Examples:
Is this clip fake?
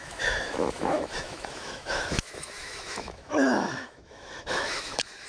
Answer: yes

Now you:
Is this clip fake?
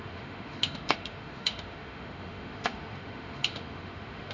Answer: yes